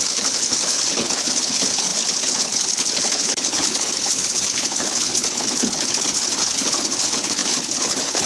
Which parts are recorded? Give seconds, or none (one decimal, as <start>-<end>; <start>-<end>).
none